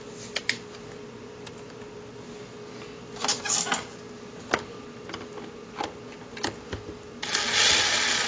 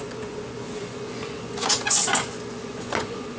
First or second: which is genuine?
first